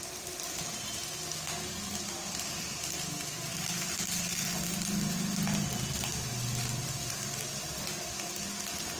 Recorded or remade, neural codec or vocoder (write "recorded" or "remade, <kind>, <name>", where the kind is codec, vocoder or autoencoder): recorded